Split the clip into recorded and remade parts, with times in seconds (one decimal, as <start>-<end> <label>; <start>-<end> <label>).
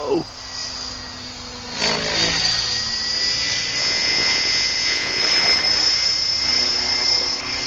0.0-3.8 recorded; 3.8-5.2 remade; 5.2-7.7 recorded